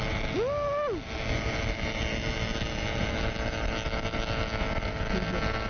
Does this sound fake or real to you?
real